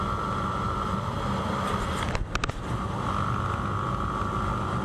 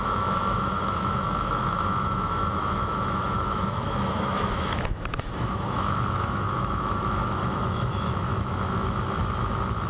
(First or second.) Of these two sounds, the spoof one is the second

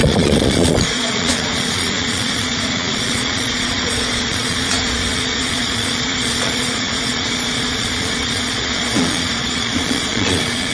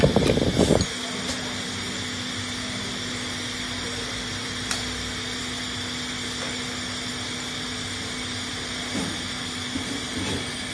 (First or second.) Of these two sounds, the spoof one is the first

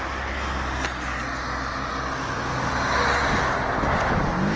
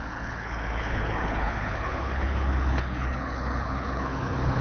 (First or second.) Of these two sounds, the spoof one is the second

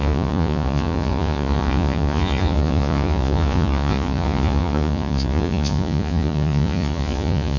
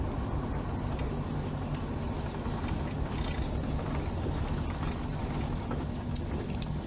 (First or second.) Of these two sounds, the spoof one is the first